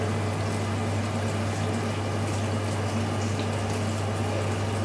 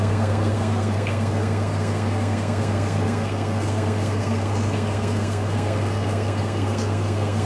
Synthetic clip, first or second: second